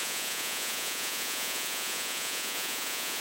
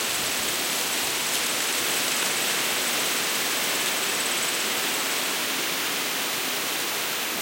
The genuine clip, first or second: second